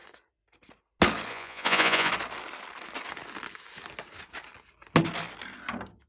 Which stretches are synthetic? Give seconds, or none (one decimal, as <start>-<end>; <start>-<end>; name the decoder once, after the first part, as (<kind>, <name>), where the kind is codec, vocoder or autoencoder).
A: 1.3-2.1 (vocoder, Vocos)